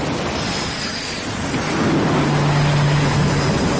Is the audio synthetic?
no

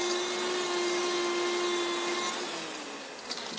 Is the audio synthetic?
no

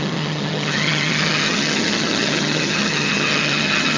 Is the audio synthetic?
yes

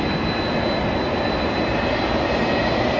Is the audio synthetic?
no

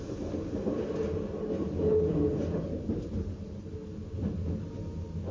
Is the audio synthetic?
no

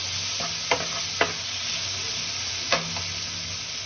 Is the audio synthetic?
no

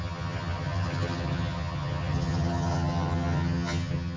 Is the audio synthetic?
yes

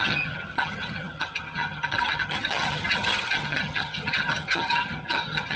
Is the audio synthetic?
yes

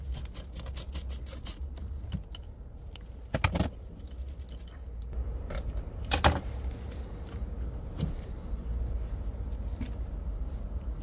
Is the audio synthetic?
no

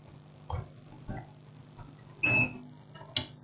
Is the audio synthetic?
no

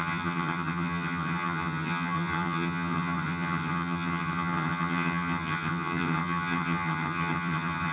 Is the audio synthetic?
yes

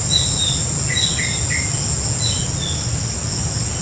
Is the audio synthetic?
no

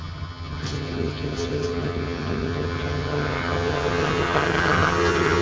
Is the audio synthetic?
yes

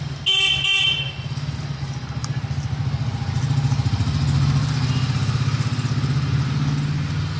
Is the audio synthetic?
no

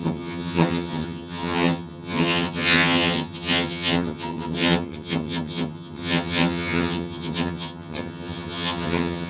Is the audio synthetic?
yes